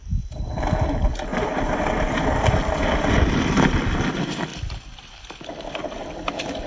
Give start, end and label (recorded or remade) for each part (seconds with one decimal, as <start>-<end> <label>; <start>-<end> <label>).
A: 0.0-2.8 recorded; 2.8-4.1 remade; 4.1-4.5 recorded; 4.5-5.2 remade; 5.2-6.7 recorded